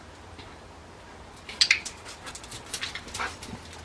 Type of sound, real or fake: real